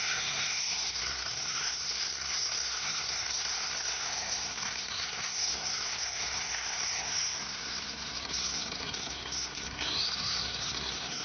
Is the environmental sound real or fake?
fake